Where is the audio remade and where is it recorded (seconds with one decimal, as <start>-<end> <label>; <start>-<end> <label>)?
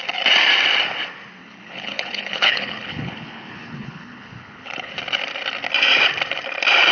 0.0-1.4 recorded; 1.4-4.9 remade; 4.9-6.9 recorded